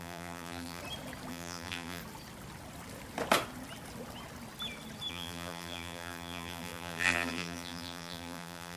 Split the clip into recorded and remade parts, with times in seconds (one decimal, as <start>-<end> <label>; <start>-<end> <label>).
0.0-0.8 remade; 0.8-1.3 recorded; 1.3-2.0 remade; 2.0-5.1 recorded; 5.1-8.8 remade